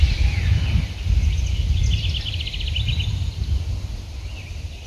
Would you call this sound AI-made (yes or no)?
no